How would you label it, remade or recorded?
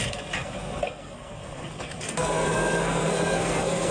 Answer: remade